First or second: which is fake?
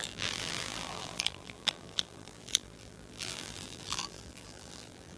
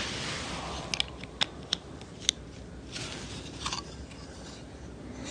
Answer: first